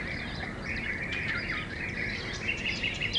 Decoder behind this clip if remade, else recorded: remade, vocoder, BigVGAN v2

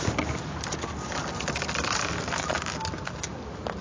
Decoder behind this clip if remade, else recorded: recorded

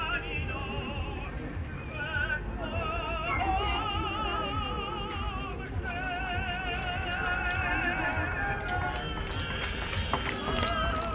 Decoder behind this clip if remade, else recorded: recorded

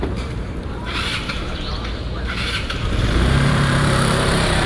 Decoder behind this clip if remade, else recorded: remade, vocoder, BigVGAN v2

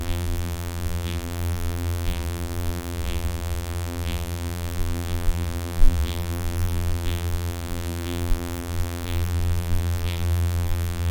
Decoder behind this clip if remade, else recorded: remade, vocoder, BigVGAN v2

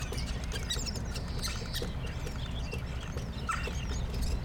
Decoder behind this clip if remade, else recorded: recorded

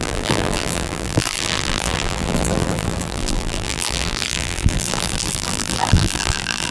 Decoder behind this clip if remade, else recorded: remade, vocoder, BigVGAN v2